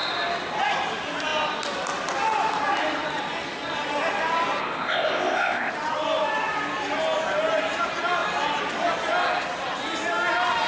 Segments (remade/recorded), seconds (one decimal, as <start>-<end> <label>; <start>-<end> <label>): 0.0-4.6 recorded; 4.6-5.7 remade; 5.7-10.7 recorded